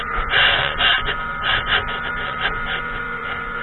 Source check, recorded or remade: remade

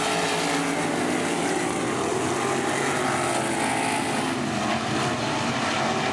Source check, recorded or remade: recorded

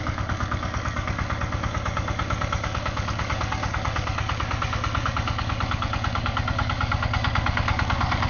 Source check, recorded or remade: remade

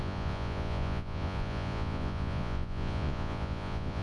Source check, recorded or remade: remade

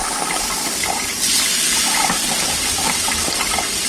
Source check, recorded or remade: recorded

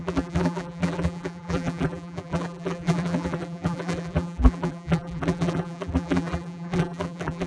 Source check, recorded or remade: remade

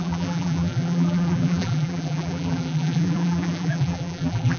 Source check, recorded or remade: remade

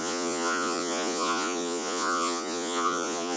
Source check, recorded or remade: remade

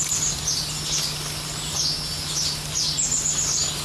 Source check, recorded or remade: recorded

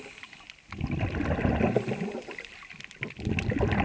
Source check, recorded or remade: recorded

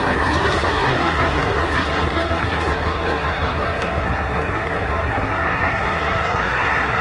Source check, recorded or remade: remade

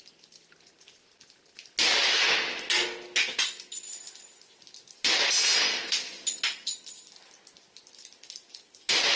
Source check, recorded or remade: recorded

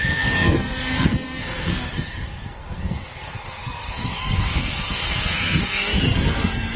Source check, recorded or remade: remade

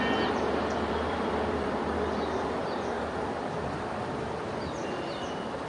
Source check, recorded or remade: remade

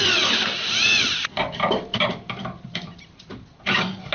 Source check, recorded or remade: remade